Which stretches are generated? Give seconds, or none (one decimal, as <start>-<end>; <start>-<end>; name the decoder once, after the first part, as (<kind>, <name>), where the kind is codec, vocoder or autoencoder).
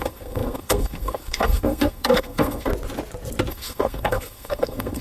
0.0-2.7 (codec, SNAC); 3.5-5.0